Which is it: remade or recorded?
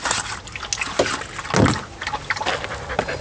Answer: recorded